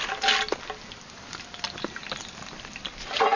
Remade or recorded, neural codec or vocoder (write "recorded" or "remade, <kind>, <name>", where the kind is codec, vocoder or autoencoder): recorded